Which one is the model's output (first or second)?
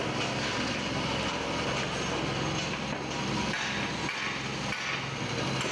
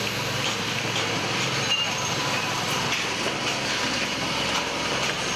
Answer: second